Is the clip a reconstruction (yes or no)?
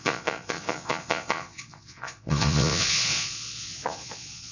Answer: yes